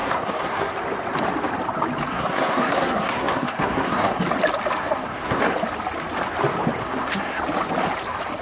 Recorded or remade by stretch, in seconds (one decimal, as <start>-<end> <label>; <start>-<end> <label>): 0.0-0.7 remade; 0.7-2.1 recorded; 2.1-4.2 remade; 4.2-4.8 recorded; 4.8-5.4 remade; 5.4-6.8 recorded; 6.8-7.4 remade; 7.4-8.4 recorded